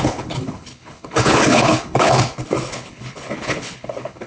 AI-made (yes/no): yes